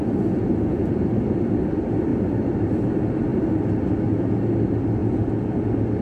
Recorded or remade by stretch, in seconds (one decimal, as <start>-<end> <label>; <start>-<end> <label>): 0.0-0.7 recorded; 0.7-1.3 remade; 1.3-2.1 recorded; 2.1-2.7 remade; 2.7-5.0 recorded; 5.0-5.6 remade; 5.6-6.0 recorded